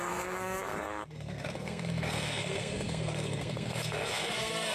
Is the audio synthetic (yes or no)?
yes